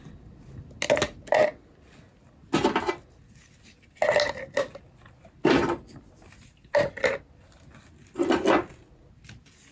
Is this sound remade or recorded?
recorded